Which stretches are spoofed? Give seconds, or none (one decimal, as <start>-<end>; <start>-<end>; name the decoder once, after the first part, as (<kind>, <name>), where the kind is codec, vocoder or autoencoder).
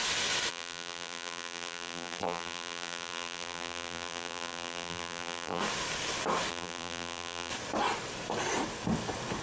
0.5-5.6 (vocoder, BigVGAN v2); 6.5-7.5